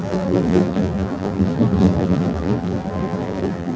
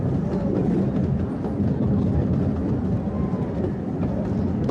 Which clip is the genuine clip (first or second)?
second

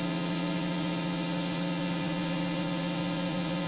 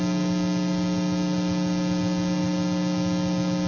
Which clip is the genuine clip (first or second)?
second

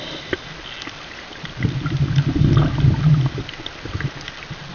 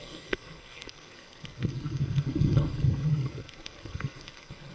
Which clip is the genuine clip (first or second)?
first